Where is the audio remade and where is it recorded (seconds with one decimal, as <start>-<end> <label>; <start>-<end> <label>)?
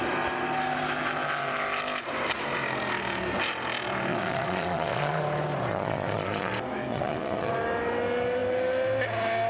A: 0.0-4.1 recorded; 4.1-5.2 remade; 5.2-5.7 recorded; 5.7-6.5 remade; 6.5-6.9 recorded; 6.9-7.5 remade; 7.5-9.5 recorded